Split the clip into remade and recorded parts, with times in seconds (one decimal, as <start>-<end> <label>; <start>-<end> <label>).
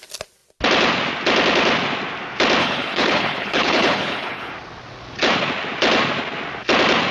0.0-2.6 recorded; 2.6-4.5 remade; 4.5-7.1 recorded